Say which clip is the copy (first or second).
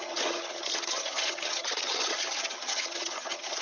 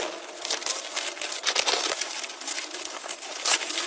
first